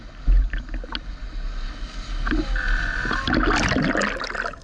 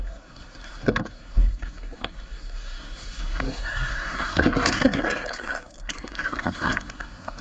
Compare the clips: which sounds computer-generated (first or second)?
second